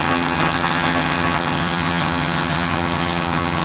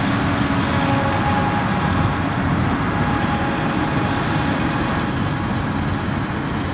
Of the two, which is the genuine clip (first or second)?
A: second